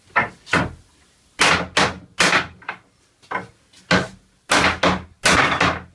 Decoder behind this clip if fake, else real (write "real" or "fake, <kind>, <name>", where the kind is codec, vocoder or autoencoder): real